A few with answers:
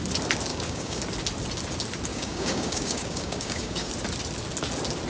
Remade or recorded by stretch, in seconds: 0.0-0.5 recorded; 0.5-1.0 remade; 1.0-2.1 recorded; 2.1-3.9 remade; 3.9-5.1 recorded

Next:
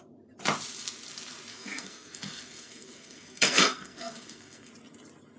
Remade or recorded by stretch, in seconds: 0.0-1.5 recorded; 1.5-4.7 remade; 4.7-5.4 recorded

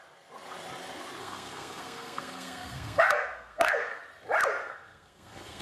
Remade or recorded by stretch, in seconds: 0.0-1.2 recorded; 1.2-4.0 remade; 4.0-4.6 recorded; 4.6-5.6 remade

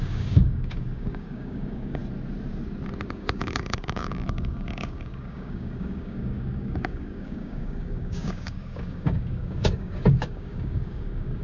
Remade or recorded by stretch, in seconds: 0.0-2.0 remade; 2.0-3.1 recorded; 3.1-11.4 remade

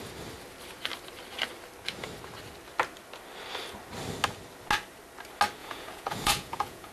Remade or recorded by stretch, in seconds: 0.0-5.6 recorded; 5.6-6.9 remade

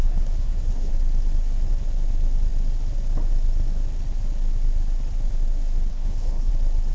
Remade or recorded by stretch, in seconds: 0.0-0.9 remade; 0.9-5.9 recorded; 5.9-6.5 remade; 6.5-6.9 recorded

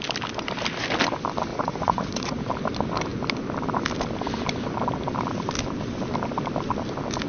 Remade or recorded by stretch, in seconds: 0.0-1.5 recorded; 1.5-2.4 remade; 2.4-7.3 recorded

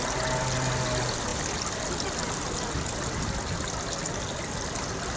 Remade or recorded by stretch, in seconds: 0.0-5.2 recorded